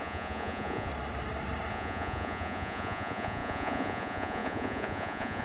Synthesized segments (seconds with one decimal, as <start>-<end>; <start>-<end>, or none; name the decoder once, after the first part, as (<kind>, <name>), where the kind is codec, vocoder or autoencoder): 0.0-0.9 (vocoder, Vocos); 1.7-5.4